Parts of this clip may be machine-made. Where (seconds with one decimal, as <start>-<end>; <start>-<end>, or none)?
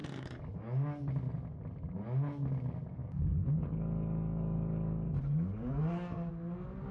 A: 0.0-1.1; 3.0-6.3